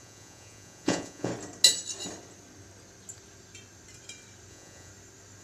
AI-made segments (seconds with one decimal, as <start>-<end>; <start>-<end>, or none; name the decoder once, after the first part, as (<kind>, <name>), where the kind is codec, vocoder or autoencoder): 0.0-1.3 (vocoder, Vocos); 4.5-4.9